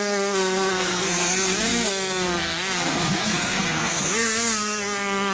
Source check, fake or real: fake